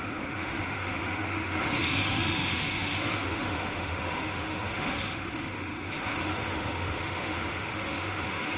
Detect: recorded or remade remade